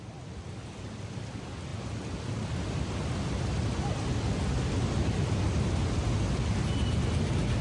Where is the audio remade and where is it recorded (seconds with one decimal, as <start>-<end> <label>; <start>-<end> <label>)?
0.0-7.6 recorded